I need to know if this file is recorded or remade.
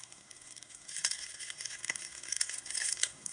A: remade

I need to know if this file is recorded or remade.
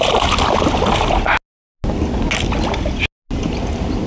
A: recorded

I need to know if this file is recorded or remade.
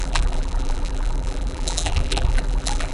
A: remade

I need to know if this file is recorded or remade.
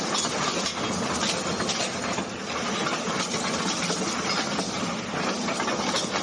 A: recorded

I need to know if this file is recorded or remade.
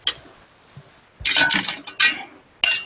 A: recorded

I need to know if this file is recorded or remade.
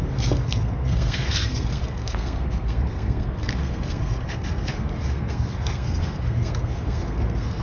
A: remade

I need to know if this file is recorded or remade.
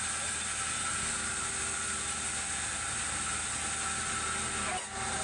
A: recorded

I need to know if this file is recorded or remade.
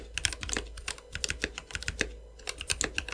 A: recorded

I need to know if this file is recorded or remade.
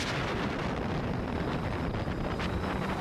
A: remade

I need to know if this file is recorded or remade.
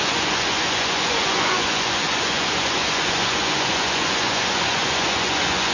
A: remade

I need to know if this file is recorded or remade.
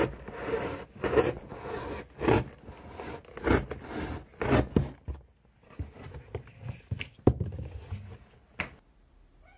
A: recorded